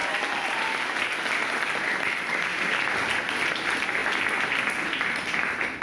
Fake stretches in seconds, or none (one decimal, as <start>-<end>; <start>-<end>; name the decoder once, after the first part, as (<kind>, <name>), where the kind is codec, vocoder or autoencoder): none